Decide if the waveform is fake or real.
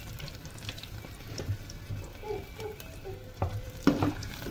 fake